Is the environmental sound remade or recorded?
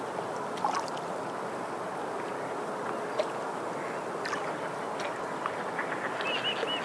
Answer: recorded